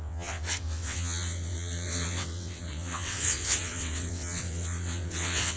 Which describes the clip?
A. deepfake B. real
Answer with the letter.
A